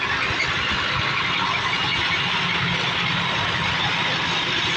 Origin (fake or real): real